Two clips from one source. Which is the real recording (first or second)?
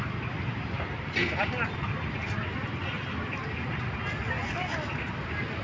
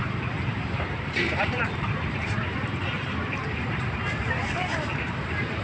first